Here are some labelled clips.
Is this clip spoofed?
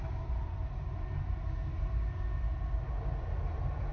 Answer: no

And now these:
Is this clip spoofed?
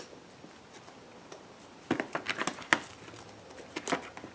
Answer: no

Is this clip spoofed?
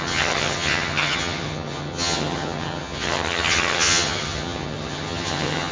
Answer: yes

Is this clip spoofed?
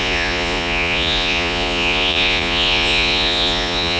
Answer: yes